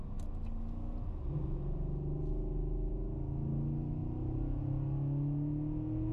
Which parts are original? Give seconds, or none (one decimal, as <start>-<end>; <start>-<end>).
0.0-6.1